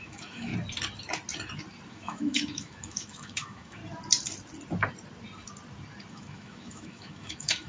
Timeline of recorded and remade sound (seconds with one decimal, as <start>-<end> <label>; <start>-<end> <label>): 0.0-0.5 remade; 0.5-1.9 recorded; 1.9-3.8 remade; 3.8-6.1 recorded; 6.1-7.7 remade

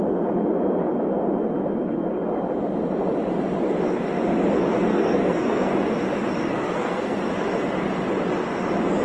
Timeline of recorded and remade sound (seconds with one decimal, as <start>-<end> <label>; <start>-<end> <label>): 0.0-4.9 recorded; 4.9-5.7 remade; 5.7-6.5 recorded; 6.5-7.2 remade; 7.2-9.0 recorded

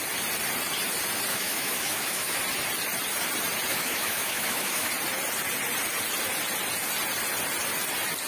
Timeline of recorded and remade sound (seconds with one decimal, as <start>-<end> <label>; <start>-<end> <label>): 0.0-1.3 recorded; 1.3-2.4 remade; 2.4-3.7 recorded; 3.7-4.9 remade; 4.9-8.3 recorded

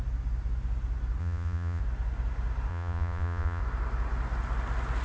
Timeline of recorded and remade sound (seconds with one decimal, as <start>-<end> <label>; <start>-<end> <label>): 0.0-1.2 recorded; 1.2-1.8 remade; 1.8-2.7 recorded; 2.7-3.6 remade; 3.6-5.0 recorded

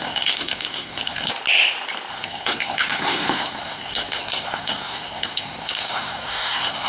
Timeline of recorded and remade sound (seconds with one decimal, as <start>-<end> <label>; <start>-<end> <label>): 0.0-1.3 remade; 1.3-2.1 recorded; 2.1-6.9 remade

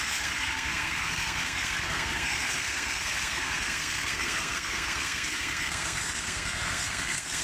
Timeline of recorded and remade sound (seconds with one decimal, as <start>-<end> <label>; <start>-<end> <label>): 0.0-7.4 remade